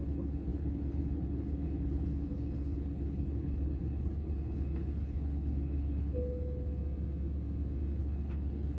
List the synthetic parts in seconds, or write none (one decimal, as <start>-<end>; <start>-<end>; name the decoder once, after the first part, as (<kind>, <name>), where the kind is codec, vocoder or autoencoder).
0.0-6.8 (codec, HILCodec); 8.0-8.8